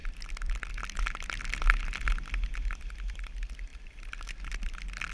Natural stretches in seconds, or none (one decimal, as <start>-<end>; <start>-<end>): 1.0-3.7; 4.3-5.1